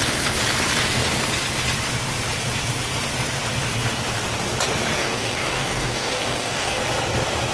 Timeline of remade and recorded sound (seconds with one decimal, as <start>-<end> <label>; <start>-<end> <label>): 0.0-5.0 recorded; 5.0-6.8 remade; 6.8-7.5 recorded